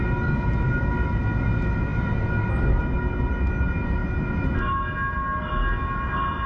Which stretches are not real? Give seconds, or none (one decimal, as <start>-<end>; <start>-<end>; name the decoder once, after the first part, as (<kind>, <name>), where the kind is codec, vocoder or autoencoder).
none